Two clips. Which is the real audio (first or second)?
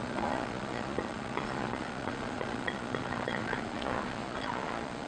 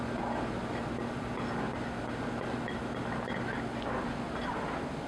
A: second